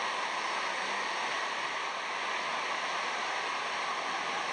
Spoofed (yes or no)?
no